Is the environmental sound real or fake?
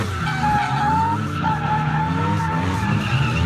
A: real